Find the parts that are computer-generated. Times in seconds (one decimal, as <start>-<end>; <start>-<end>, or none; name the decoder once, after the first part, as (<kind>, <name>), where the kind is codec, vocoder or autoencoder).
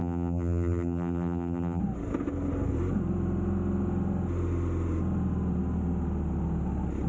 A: 0.0-1.8 (vocoder, BigVGAN v2)